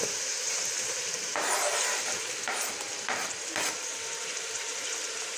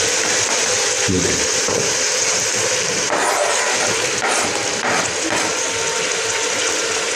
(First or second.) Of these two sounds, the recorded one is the second